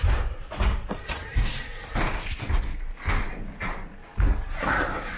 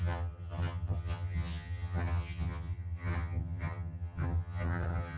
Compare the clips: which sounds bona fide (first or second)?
first